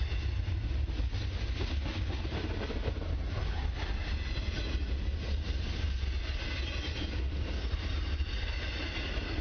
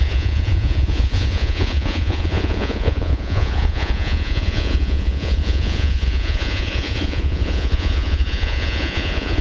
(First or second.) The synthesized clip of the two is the second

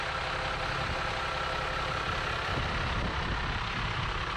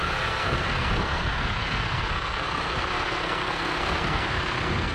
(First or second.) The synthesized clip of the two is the second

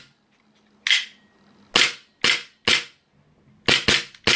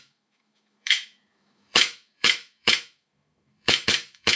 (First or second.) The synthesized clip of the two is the second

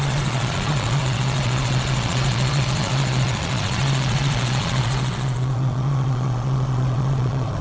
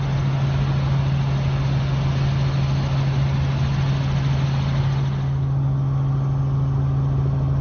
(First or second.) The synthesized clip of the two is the first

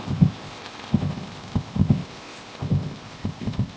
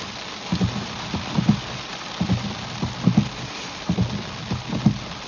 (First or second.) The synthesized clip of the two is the first